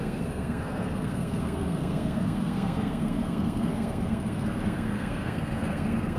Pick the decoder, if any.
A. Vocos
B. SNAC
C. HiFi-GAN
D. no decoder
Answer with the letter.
B